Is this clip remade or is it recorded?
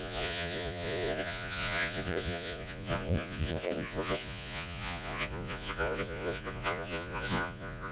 remade